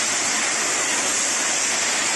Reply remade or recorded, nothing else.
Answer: recorded